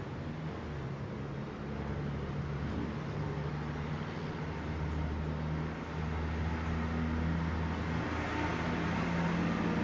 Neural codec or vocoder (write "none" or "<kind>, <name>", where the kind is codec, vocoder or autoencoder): none